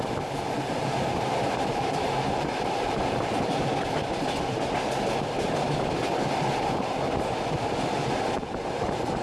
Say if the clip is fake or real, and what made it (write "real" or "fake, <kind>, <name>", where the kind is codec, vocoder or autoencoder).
real